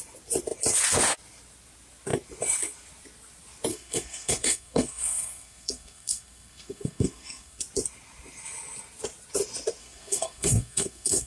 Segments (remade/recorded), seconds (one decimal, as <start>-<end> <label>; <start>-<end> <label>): 0.0-3.7 recorded; 3.7-7.6 remade; 7.6-9.8 recorded; 9.8-11.3 remade